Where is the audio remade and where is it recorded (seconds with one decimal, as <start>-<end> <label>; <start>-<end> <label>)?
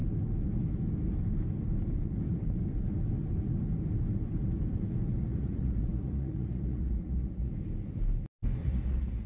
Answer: 0.0-5.2 recorded; 5.2-7.5 remade; 7.5-8.6 recorded; 8.6-9.3 remade